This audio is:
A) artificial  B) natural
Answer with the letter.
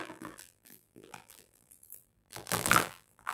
A